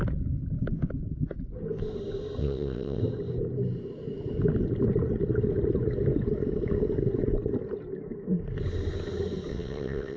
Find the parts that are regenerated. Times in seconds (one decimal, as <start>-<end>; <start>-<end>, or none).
2.4-3.0; 9.5-10.2